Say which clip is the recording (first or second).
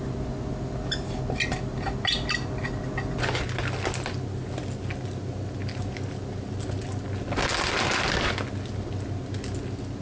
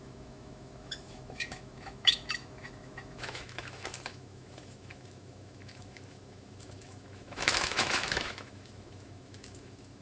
first